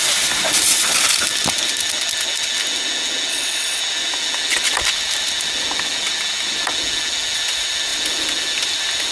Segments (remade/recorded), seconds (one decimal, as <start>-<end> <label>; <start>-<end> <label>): 0.0-3.3 recorded; 3.3-3.8 remade; 3.8-9.1 recorded